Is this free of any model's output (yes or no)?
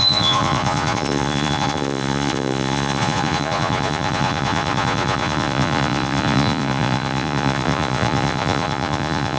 no